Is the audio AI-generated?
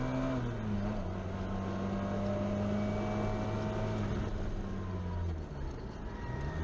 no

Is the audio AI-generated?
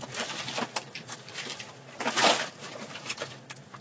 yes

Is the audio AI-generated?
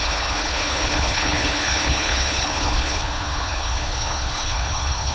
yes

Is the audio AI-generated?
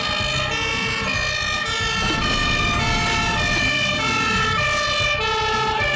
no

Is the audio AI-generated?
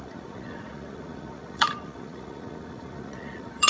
yes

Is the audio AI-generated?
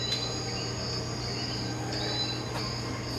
no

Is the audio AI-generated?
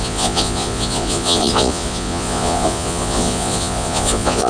yes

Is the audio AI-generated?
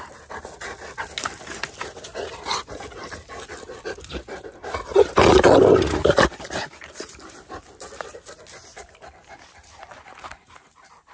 no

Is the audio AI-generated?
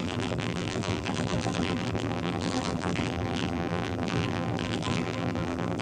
yes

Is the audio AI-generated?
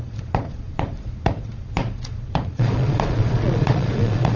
yes